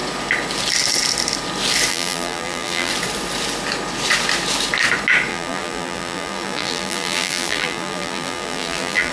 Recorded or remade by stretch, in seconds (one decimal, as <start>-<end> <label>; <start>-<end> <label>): 0.0-1.9 recorded; 1.9-2.9 remade; 2.9-5.3 recorded; 5.3-9.1 remade

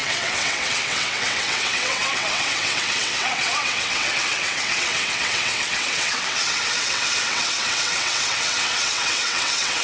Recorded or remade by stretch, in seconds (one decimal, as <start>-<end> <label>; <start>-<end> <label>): 0.0-9.8 remade

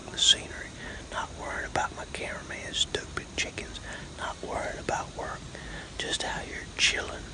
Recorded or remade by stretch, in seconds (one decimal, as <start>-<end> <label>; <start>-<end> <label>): 0.0-7.3 recorded